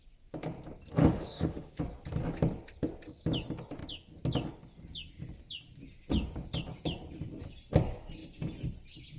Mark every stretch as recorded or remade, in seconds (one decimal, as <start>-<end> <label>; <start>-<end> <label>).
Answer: 0.0-1.0 recorded; 1.0-1.8 remade; 1.8-9.2 recorded